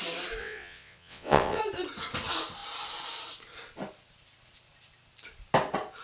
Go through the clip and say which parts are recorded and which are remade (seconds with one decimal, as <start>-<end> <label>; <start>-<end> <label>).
0.0-0.4 recorded; 0.4-1.6 remade; 1.6-6.0 recorded